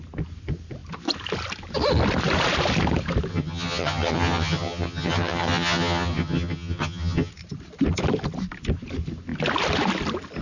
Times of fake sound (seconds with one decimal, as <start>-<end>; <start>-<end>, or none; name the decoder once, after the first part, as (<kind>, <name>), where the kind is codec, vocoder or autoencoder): 3.3-7.3 (vocoder, HiFi-GAN)